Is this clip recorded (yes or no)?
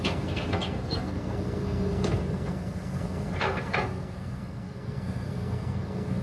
no